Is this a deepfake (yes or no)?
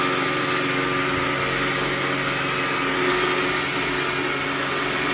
no